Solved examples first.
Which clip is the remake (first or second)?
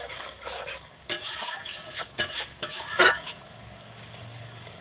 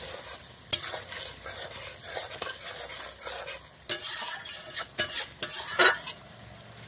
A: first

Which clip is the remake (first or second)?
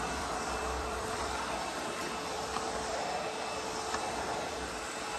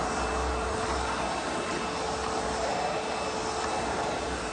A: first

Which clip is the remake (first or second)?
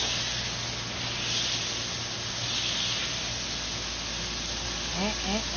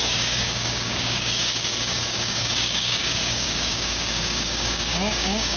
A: second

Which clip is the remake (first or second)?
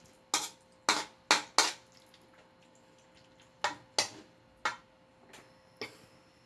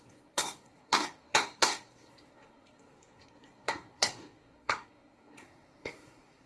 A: second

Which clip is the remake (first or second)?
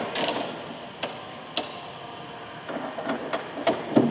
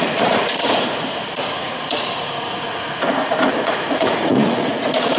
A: second